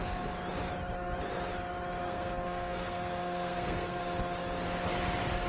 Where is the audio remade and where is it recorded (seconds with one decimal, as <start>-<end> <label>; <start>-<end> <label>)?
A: 0.0-2.0 recorded; 2.0-4.0 remade; 4.0-5.5 recorded